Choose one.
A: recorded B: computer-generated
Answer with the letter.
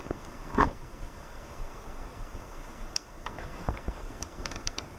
B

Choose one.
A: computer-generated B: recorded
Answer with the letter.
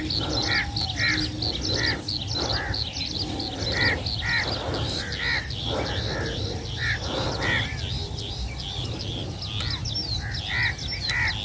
B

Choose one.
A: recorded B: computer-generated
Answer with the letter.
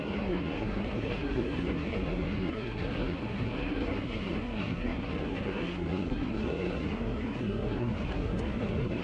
B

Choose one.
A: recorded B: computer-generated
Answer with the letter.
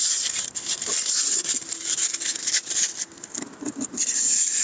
A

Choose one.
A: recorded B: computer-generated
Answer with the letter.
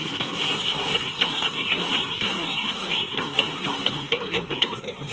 B